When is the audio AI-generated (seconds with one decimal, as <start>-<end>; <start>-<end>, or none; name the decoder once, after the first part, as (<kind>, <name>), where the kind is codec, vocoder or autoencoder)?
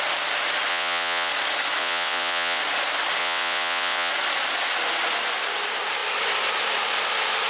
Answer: 0.7-1.3 (vocoder, WaveNeXt); 1.8-2.6; 3.2-4.1